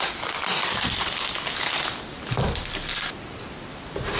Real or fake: real